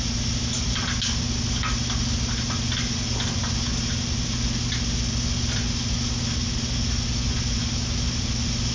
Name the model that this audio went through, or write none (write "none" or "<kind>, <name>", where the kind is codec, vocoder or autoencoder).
none